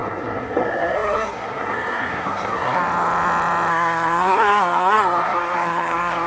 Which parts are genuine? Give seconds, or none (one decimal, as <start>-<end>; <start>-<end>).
2.8-3.7